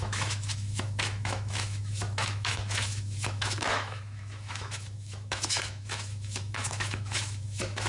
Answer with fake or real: fake